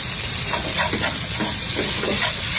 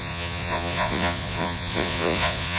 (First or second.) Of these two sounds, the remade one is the second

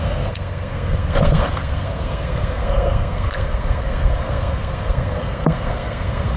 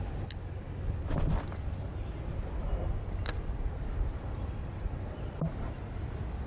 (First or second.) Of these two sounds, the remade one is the first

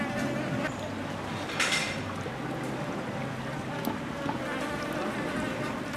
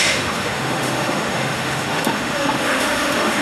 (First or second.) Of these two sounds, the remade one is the second